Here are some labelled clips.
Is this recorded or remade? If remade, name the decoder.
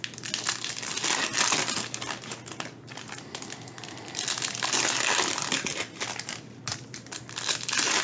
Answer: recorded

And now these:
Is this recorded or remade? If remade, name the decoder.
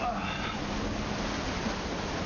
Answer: recorded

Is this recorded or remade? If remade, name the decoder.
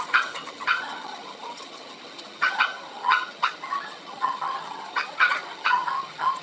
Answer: remade, vocoder, HiFi-GAN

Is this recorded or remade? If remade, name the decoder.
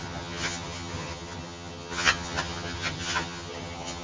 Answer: remade, vocoder, HiFi-GAN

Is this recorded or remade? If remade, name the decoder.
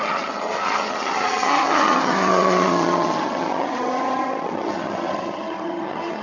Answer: remade, vocoder, HiFi-GAN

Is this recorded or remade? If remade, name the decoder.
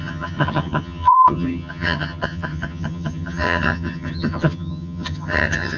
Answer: remade, vocoder, HiFi-GAN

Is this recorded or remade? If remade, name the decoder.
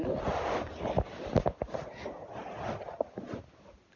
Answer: recorded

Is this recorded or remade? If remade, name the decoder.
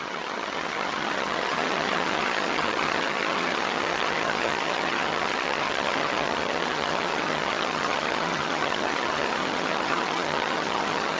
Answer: remade, vocoder, HiFi-GAN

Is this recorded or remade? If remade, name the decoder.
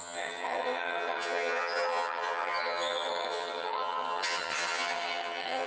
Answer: remade, vocoder, HiFi-GAN